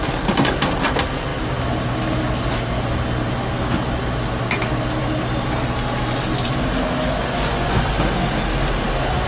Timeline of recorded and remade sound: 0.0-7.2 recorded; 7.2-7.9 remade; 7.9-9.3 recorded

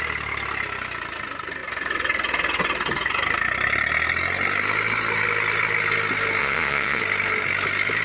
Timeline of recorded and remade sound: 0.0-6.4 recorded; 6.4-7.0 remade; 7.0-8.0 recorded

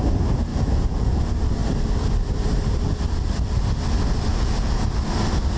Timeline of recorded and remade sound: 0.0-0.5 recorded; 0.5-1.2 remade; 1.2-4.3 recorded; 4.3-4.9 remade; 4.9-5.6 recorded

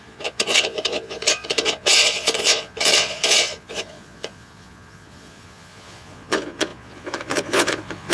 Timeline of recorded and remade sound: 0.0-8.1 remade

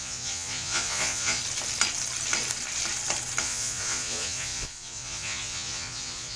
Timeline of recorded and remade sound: 0.0-1.4 remade; 1.4-3.4 recorded; 3.4-6.4 remade

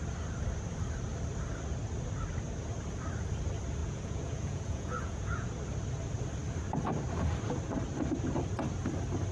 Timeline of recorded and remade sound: 0.0-3.8 recorded; 3.8-5.5 remade; 5.5-9.3 recorded